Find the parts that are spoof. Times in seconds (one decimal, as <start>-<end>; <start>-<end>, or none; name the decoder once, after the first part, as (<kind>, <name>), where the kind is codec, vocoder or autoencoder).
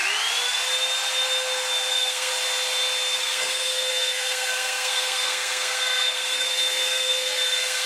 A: 1.9-2.3 (codec, SNAC); 3.2-7.9